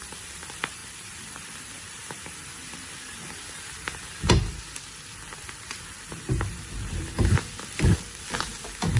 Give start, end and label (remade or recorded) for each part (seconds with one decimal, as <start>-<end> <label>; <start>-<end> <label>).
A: 0.0-9.0 recorded